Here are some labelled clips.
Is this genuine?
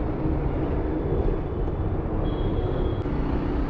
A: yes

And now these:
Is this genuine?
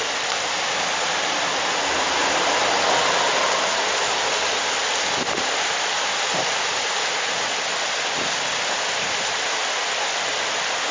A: yes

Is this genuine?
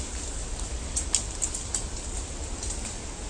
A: yes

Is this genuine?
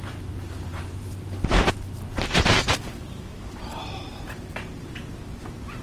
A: no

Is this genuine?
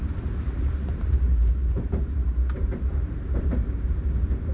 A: no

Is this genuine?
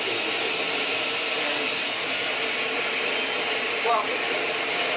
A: no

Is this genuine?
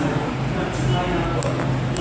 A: yes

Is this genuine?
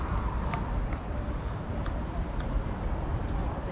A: no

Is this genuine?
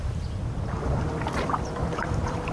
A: no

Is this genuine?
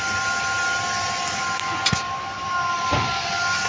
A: yes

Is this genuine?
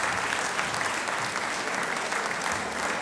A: yes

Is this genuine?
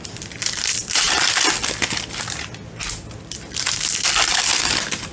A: no